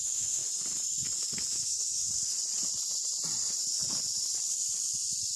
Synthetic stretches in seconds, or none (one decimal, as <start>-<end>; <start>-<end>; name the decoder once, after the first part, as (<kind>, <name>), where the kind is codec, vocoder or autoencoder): 0.0-0.4 (autoencoder, DAC-VAE); 1.5-2.0